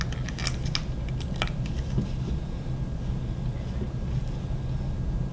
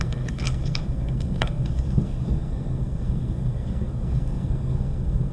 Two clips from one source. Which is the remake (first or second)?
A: second